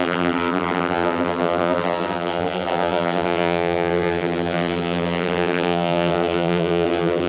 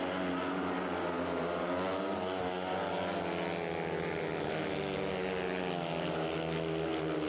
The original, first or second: second